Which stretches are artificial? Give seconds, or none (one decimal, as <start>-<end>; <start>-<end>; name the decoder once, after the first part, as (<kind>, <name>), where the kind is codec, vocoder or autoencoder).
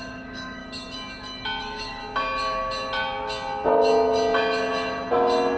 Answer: 0.0-0.6 (autoencoder, DAC-VAE); 1.6-2.0